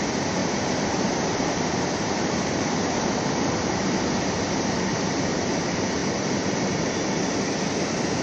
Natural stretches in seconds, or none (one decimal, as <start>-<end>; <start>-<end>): 0.0-0.4; 4.0-4.9; 5.5-8.2